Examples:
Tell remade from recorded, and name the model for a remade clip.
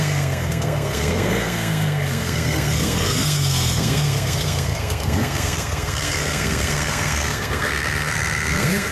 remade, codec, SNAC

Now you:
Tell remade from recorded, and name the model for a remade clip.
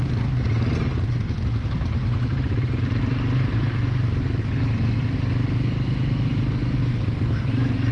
recorded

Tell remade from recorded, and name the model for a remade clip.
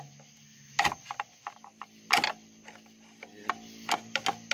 recorded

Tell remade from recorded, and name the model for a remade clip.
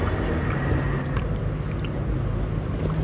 recorded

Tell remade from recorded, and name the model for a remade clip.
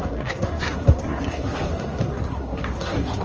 remade, codec, SNAC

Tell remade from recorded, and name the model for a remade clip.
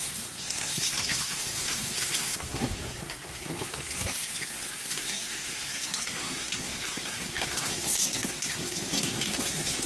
remade, codec, SNAC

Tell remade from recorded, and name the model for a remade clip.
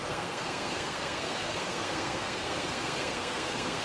remade, codec, SNAC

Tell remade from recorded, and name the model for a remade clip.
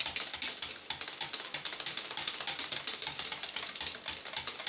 recorded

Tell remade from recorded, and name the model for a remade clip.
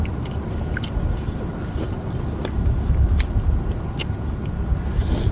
recorded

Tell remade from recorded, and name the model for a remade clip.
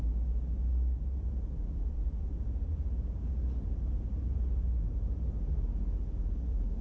recorded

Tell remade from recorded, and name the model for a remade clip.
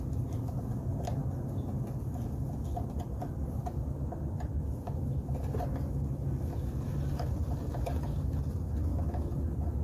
recorded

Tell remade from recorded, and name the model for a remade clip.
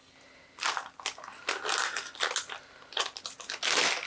recorded